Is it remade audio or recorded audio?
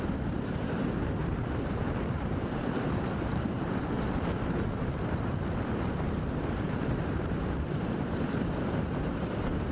remade